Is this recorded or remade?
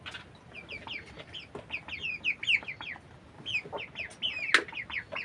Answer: recorded